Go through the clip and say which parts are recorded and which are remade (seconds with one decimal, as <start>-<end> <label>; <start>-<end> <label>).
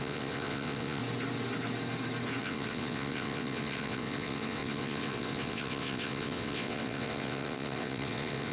0.0-1.0 remade; 1.0-2.4 recorded; 2.4-8.5 remade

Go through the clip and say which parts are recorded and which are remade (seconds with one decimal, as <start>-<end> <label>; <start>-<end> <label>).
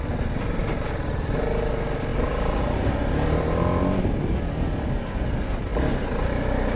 0.0-6.8 recorded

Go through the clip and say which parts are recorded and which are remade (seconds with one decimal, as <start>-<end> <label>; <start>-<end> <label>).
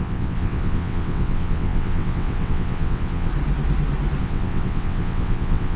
0.0-3.3 remade; 3.3-4.2 recorded; 4.2-5.8 remade